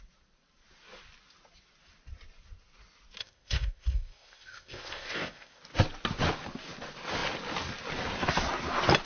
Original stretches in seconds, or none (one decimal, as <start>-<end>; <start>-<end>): 0.0-3.2; 5.6-9.1